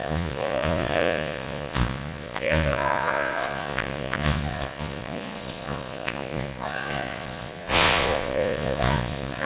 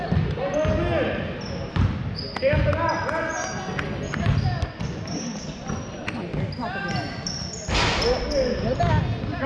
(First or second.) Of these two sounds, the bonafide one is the second